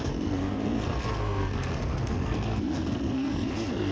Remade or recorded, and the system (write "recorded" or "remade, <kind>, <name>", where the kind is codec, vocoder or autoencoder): remade, codec, SNAC